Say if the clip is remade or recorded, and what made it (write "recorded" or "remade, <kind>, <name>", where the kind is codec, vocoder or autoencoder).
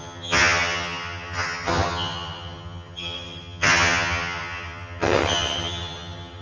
remade, vocoder, HiFi-GAN